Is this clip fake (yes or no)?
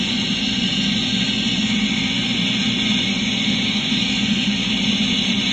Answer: yes